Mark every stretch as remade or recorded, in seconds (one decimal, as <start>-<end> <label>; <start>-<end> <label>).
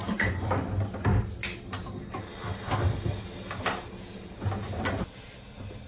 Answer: 0.0-0.5 remade; 0.5-5.9 recorded